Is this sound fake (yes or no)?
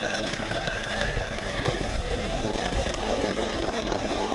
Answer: yes